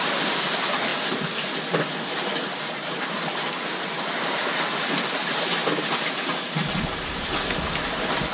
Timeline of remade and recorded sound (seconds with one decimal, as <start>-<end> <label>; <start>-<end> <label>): 0.0-8.3 recorded